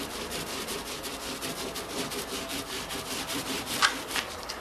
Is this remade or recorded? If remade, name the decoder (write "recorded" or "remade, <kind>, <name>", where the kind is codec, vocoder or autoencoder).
remade, vocoder, BigVGAN v2